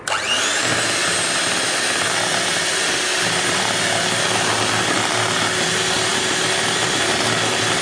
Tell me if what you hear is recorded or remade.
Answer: recorded